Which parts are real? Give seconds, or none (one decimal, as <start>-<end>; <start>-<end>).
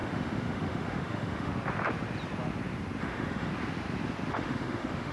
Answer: 1.5-3.0; 3.5-4.3